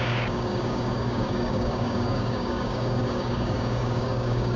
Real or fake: fake